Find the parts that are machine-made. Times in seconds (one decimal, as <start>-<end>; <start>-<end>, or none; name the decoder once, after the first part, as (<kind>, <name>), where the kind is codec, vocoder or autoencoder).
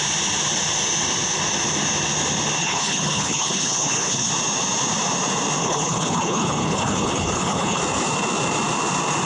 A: 2.6-4.3 (codec, HILCodec); 5.6-7.8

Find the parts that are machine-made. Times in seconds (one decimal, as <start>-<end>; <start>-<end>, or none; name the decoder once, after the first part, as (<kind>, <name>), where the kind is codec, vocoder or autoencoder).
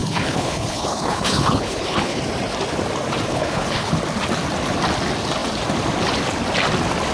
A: 0.0-2.2 (codec, HILCodec); 3.3-3.9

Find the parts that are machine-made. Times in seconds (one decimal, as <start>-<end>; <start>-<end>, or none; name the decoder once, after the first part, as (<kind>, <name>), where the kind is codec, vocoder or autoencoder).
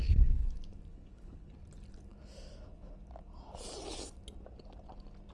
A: 0.0-0.5 (codec, HILCodec); 0.9-1.5